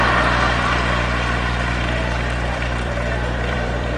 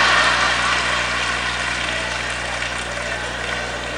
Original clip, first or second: second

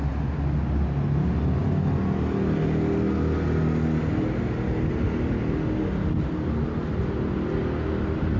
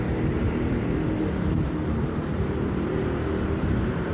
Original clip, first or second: first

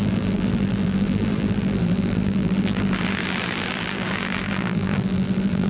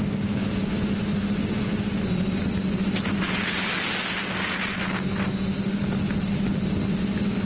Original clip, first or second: second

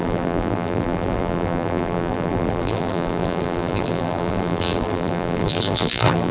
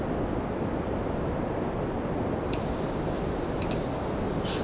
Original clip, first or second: second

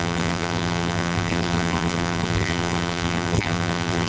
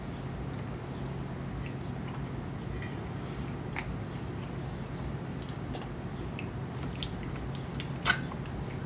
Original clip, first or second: second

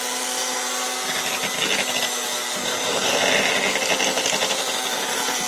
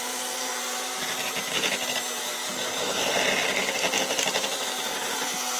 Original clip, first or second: first